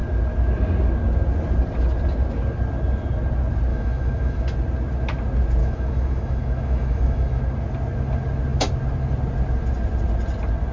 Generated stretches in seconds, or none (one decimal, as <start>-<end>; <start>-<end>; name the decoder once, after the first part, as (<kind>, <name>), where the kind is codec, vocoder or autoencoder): 3.7-4.4 (autoencoder, DAC-VAE); 5.6-7.4